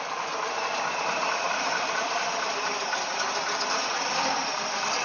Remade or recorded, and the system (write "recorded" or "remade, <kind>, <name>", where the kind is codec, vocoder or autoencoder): recorded